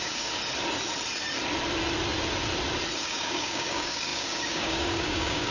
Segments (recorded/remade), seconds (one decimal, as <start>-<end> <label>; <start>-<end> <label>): 0.0-0.4 remade; 0.4-3.0 recorded; 3.0-5.5 remade